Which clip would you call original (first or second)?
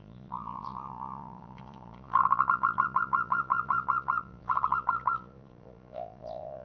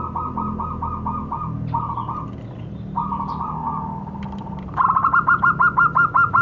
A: second